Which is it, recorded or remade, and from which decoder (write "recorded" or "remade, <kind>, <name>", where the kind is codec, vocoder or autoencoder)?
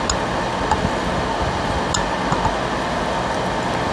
recorded